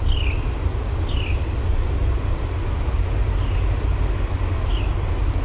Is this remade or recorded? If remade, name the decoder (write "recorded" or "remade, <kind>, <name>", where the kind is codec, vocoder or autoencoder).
recorded